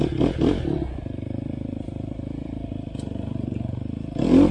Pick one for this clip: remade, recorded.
remade